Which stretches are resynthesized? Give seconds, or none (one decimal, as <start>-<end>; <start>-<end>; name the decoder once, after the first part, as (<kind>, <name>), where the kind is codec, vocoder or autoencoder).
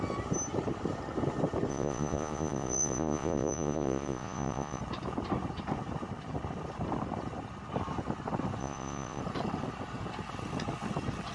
1.7-4.8 (vocoder, Vocos); 8.6-9.2